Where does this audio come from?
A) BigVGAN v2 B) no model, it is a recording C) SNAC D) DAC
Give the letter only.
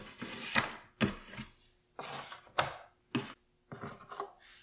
B